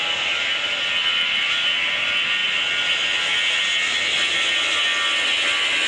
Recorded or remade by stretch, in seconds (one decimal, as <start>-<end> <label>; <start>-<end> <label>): 0.0-5.9 recorded